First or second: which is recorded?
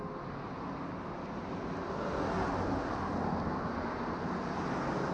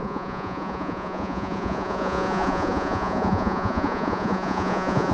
first